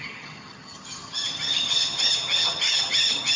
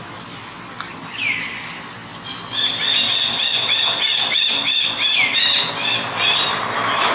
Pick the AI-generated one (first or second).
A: first